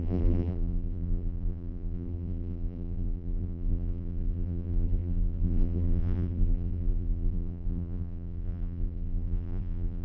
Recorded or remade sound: remade